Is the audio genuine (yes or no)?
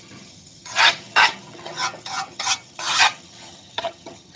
no